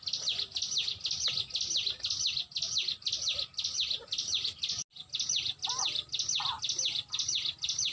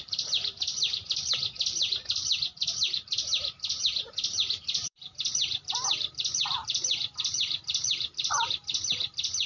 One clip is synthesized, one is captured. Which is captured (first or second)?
first